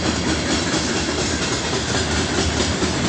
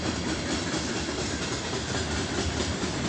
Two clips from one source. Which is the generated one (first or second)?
second